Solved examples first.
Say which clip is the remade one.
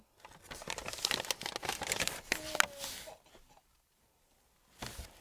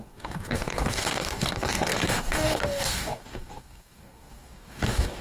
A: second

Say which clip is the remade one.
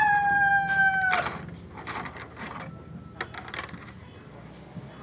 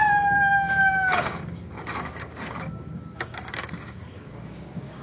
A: second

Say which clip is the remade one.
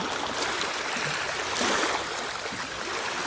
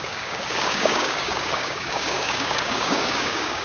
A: second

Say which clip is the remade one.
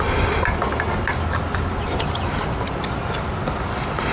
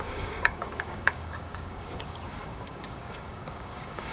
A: second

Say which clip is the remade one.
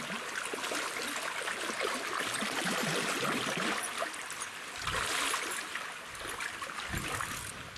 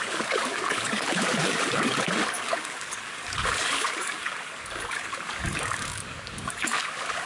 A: second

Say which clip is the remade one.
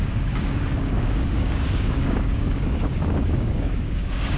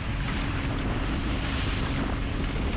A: first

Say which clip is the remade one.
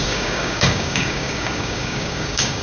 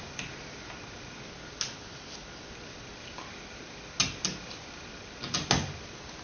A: first